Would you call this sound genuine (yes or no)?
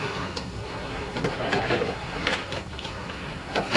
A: no